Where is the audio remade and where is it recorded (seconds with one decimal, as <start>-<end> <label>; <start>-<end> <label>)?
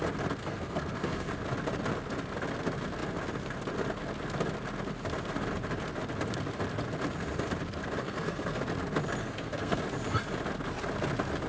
0.0-0.4 recorded; 0.4-1.3 remade; 1.3-8.0 recorded; 8.0-8.6 remade; 8.6-9.2 recorded; 9.2-9.8 remade; 9.8-11.5 recorded